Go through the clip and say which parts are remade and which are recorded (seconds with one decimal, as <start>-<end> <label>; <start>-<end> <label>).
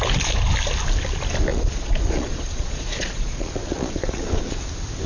0.0-1.5 recorded; 1.5-4.6 remade; 4.6-5.1 recorded